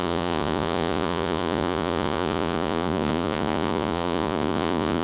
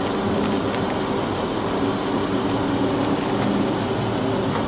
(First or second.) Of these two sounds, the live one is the second